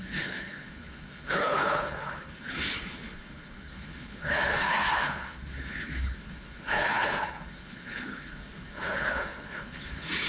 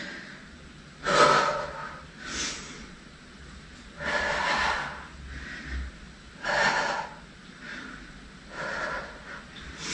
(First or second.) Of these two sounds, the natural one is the second